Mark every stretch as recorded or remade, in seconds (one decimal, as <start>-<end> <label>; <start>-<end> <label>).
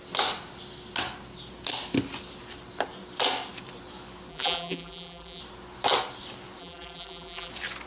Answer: 0.0-4.3 recorded; 4.3-5.4 remade; 5.4-6.6 recorded; 6.6-7.5 remade; 7.5-7.9 recorded